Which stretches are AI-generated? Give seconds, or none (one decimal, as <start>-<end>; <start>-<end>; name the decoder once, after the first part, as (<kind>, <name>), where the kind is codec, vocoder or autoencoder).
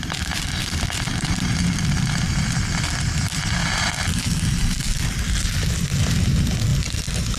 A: 0.0-3.6 (vocoder, BigVGAN v2); 4.2-6.7